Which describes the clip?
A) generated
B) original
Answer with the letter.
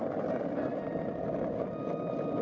B